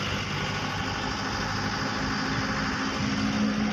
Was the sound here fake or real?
real